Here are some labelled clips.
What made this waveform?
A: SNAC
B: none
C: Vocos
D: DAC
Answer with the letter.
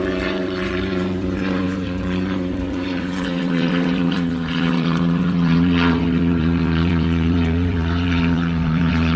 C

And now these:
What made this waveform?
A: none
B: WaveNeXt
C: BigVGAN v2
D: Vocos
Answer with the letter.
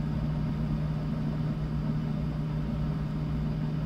A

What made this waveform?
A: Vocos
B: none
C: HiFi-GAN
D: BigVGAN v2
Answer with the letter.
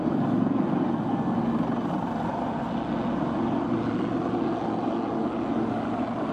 B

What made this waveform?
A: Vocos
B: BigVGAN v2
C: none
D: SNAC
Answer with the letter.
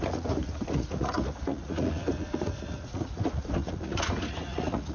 A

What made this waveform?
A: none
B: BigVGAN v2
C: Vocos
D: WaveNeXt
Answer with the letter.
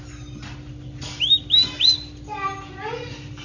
A